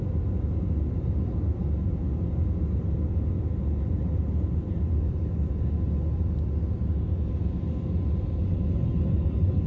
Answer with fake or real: real